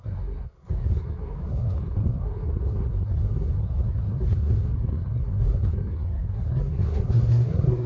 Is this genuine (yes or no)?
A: no